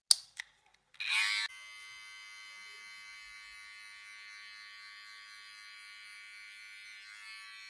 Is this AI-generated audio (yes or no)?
no